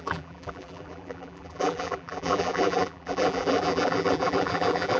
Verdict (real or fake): fake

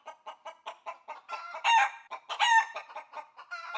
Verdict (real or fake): real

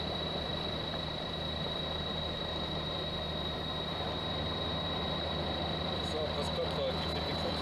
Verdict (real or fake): fake